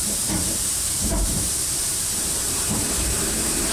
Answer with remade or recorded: remade